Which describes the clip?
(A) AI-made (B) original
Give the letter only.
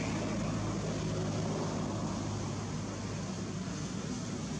B